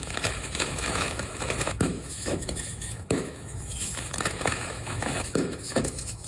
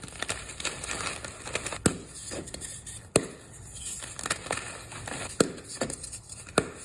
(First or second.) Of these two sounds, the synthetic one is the first